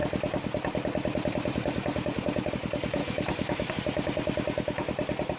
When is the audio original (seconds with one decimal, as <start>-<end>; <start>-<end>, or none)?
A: 0.0-3.0; 3.7-5.4